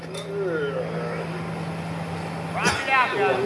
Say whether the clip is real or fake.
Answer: real